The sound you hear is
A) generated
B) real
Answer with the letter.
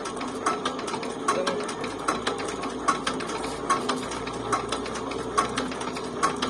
B